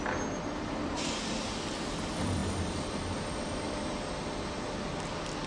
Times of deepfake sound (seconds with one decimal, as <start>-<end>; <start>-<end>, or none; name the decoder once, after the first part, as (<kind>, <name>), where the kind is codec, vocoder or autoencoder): none